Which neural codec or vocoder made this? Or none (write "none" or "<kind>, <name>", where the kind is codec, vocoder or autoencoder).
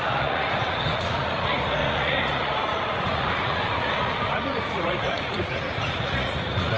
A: vocoder, Vocos